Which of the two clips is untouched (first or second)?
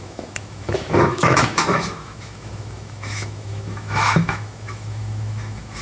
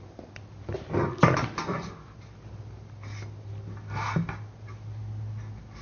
second